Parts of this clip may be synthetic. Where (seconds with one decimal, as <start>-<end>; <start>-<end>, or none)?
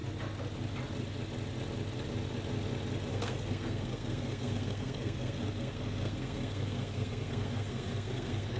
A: 3.1-8.6